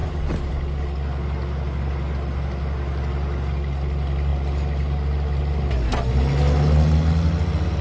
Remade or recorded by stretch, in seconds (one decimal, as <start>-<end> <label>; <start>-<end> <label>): 0.0-0.5 remade; 0.5-7.8 recorded